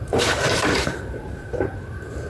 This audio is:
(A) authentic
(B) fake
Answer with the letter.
B